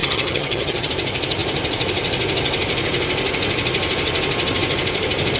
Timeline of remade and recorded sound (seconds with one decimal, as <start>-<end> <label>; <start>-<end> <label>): 0.0-0.9 remade; 0.9-5.4 recorded